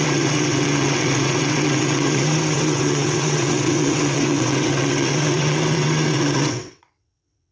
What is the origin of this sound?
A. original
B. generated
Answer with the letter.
B